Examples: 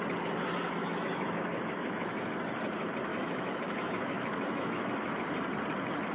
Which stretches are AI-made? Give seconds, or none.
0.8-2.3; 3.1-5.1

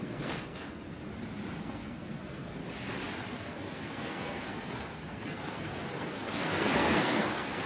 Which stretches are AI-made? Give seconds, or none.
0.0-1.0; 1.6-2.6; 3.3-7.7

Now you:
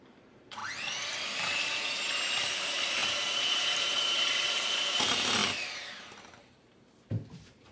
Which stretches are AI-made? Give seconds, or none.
0.0-0.6; 2.5-5.4; 6.3-7.7

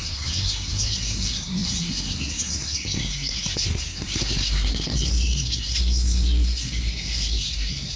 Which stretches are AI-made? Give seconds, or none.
0.0-8.0

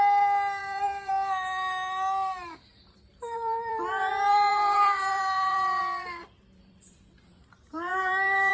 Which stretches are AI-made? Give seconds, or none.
0.6-1.1; 3.1-5.8; 6.2-8.5